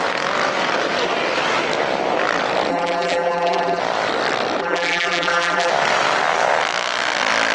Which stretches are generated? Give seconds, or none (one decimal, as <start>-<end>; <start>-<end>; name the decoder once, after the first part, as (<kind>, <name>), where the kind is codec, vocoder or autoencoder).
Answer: 2.7-3.8 (vocoder, BigVGAN v2); 4.6-5.7